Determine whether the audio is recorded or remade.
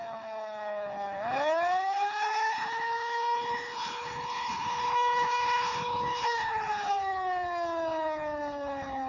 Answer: remade